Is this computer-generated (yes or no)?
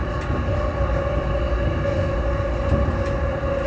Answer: no